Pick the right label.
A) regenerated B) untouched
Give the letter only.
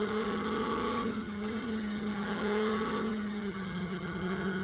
A